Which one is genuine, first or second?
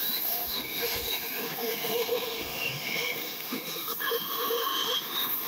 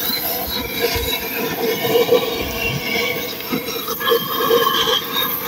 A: second